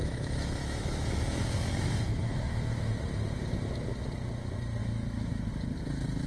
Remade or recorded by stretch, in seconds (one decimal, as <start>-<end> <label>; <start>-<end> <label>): 0.0-2.9 remade; 2.9-4.8 recorded; 4.8-5.5 remade; 5.5-6.3 recorded